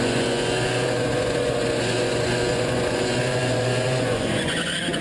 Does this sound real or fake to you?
fake